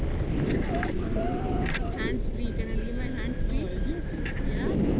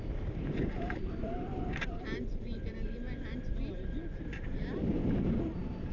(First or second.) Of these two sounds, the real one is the first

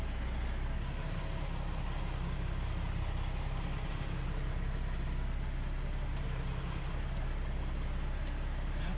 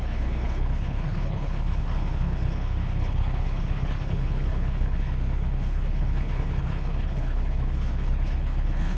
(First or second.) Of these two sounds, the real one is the first